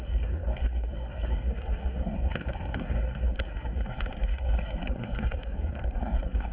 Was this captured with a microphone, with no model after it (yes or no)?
no